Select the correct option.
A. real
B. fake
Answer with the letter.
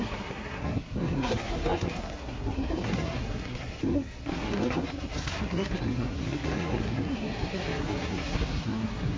B